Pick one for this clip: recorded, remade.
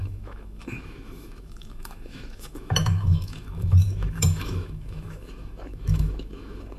remade